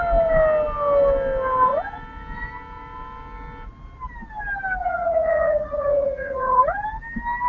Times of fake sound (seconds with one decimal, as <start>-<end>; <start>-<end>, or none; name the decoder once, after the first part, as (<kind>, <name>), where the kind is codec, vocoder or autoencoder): 4.8-6.6 (vocoder, Vocos)